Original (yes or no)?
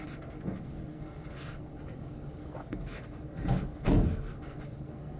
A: no